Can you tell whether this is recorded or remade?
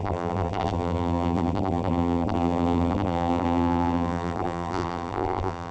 remade